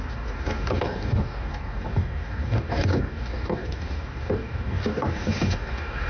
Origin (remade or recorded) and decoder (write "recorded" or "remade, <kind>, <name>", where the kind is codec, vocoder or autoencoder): remade, codec, DAC